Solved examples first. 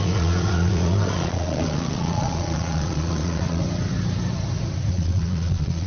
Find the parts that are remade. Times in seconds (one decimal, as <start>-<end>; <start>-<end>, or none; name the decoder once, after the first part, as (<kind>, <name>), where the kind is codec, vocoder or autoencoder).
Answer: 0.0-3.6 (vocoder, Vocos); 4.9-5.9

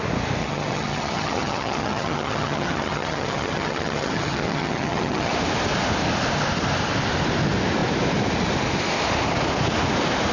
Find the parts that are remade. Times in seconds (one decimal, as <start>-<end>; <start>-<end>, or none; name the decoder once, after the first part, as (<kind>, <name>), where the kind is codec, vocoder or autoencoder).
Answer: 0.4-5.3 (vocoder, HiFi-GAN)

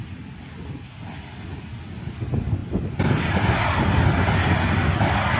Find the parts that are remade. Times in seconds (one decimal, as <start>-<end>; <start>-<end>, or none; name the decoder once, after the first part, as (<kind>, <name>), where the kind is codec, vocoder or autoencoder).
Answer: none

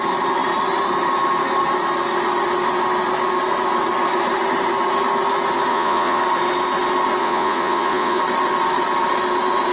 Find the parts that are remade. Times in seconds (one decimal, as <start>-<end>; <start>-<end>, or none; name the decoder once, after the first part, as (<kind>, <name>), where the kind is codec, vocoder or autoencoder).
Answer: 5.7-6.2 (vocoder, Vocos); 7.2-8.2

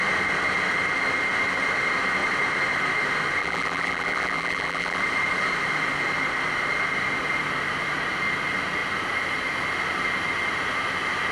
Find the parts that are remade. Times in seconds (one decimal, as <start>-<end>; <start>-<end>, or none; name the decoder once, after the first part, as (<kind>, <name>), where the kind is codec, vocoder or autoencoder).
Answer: 3.4-5.0 (vocoder, BigVGAN v2)